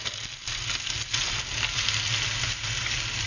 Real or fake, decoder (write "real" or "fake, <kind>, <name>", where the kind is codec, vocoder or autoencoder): real